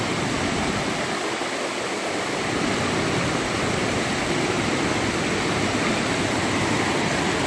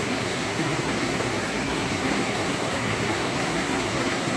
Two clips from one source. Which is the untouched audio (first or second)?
first